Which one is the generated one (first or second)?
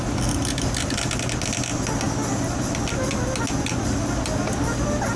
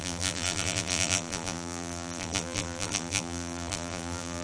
second